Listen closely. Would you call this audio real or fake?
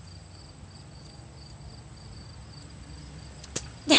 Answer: real